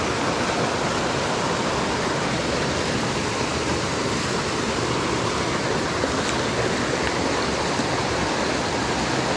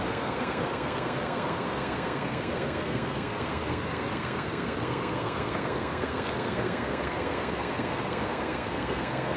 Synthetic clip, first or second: second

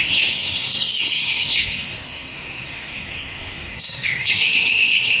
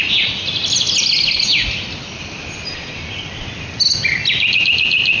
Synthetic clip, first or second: first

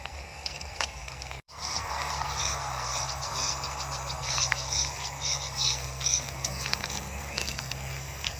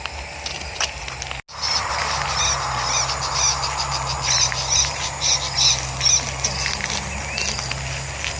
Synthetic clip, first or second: first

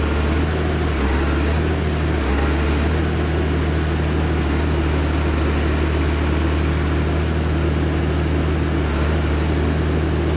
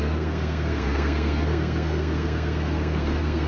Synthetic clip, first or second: second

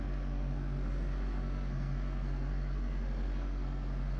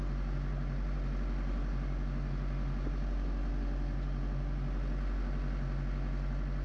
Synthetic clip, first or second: first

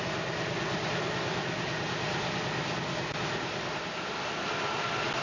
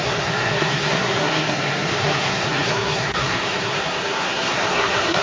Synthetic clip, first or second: second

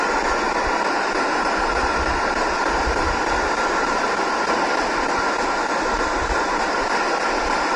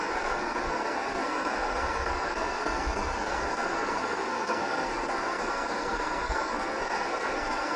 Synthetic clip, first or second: second